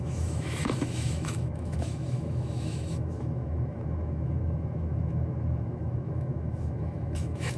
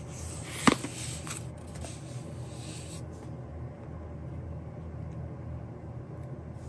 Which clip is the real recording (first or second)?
second